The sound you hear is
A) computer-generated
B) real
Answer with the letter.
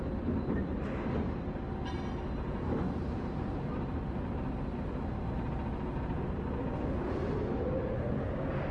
B